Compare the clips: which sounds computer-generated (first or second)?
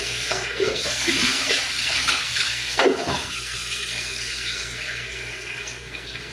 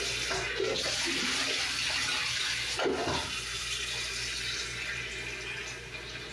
first